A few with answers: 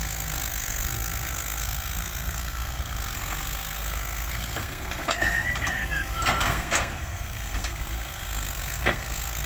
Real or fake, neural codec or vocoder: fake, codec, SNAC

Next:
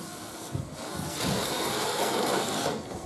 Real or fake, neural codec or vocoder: fake, codec, SNAC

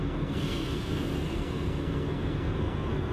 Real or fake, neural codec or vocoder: fake, codec, SNAC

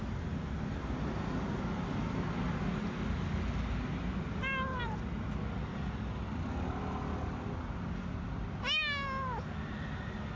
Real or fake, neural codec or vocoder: real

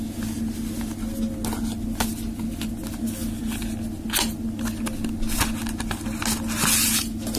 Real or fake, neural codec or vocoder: real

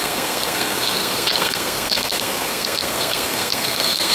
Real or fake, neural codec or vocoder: fake, codec, SNAC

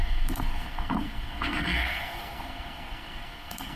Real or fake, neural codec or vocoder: fake, codec, SNAC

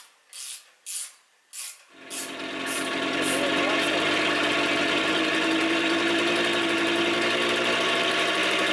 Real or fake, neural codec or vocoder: real